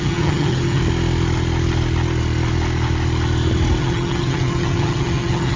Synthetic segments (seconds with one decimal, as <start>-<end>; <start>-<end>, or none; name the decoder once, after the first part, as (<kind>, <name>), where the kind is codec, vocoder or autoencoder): 0.0-0.8 (vocoder, HiFi-GAN); 3.8-5.6